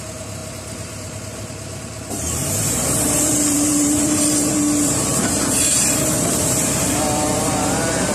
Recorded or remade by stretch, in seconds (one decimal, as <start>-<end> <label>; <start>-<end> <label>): 0.0-8.1 remade